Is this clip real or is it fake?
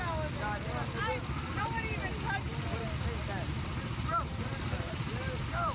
real